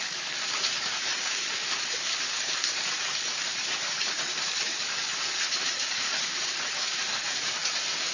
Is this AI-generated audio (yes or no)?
yes